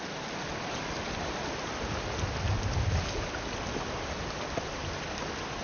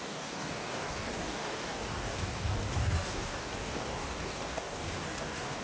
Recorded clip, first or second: first